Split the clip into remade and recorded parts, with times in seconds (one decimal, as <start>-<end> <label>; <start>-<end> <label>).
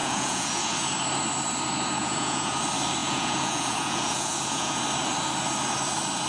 0.0-0.6 remade; 0.6-2.0 recorded; 2.0-2.6 remade; 2.6-3.0 recorded; 3.0-4.8 remade; 4.8-6.3 recorded